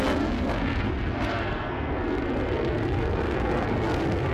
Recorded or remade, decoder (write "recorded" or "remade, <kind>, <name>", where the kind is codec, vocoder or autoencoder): remade, codec, SNAC